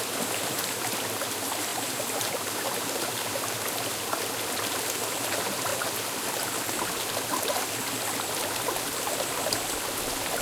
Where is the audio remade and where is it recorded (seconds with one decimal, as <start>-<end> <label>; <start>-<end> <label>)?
0.0-1.7 recorded; 1.7-3.6 remade; 3.6-10.4 recorded